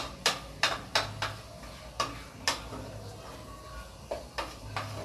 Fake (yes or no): no